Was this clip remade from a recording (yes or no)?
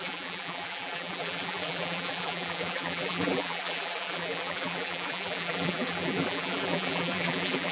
yes